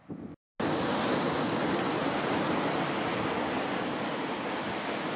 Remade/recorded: recorded